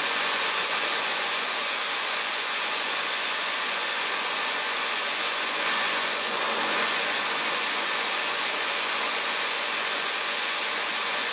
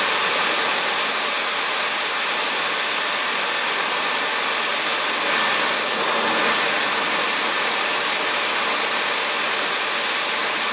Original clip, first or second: second